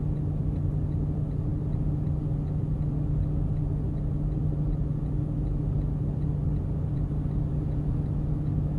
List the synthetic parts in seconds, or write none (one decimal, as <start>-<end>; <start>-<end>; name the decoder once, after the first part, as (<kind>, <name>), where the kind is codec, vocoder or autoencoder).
6.4-7.1 (vocoder, BigVGAN v2)